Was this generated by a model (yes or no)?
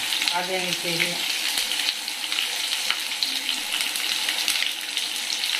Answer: yes